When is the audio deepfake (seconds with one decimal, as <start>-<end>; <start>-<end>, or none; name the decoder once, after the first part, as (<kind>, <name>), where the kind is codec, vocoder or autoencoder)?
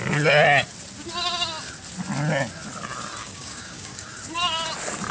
3.2-4.2 (codec, DAC)